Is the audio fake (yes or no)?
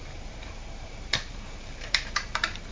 yes